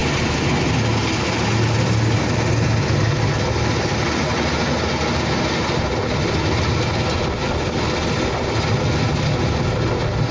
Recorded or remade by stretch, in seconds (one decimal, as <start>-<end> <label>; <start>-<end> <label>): 0.0-10.3 recorded